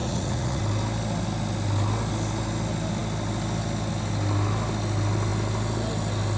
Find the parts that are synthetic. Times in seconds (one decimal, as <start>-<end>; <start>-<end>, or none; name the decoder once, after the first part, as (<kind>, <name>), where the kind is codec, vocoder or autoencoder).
0.0-0.6 (vocoder, Vocos)